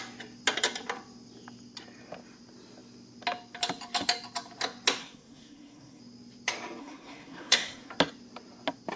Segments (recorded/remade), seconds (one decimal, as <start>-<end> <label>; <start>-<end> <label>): 0.0-5.0 recorded; 5.0-6.0 remade; 6.0-6.8 recorded; 6.8-7.9 remade; 7.9-9.0 recorded